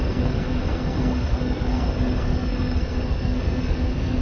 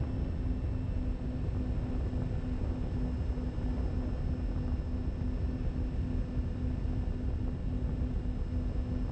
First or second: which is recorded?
second